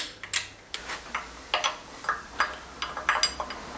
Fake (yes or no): no